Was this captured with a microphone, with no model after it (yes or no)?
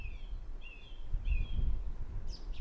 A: yes